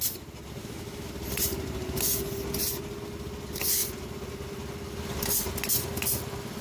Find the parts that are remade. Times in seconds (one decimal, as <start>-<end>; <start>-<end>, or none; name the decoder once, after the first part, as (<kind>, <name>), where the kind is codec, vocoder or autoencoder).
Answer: 0.6-1.1 (autoencoder, DAC-VAE)